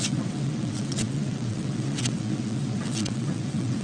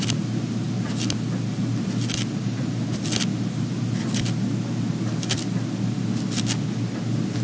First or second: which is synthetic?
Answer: first